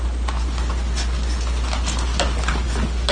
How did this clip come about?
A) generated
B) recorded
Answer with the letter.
B